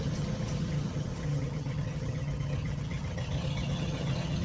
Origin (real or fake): fake